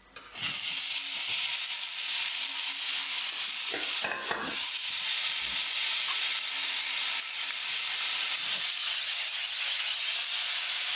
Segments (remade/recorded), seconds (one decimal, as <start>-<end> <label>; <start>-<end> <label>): 0.0-4.4 recorded; 4.4-5.0 remade; 5.0-8.8 recorded; 8.8-10.1 remade; 10.1-11.0 recorded